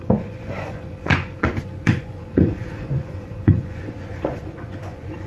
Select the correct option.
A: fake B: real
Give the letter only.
A